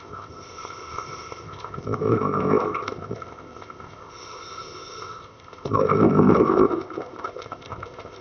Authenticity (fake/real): fake